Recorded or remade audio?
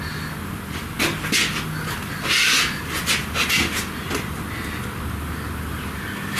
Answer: recorded